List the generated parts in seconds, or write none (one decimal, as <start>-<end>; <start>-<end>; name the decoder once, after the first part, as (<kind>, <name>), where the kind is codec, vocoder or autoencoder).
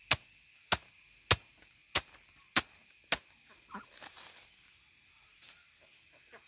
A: none